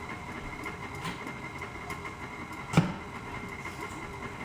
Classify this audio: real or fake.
real